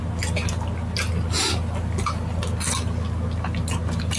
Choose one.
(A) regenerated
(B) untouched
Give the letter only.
B